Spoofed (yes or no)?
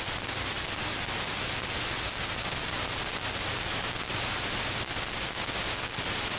no